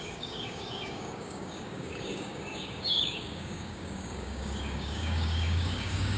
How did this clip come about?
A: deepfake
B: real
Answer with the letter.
A